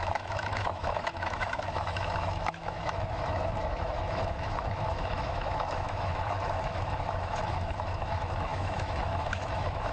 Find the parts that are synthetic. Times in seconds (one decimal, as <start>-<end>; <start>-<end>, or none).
0.0-9.9